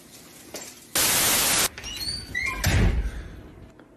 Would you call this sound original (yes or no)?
yes